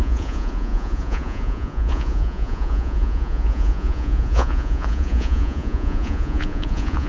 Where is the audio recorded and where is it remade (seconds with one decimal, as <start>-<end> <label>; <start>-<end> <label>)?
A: 0.0-7.1 remade